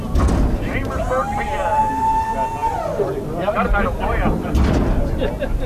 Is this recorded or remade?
recorded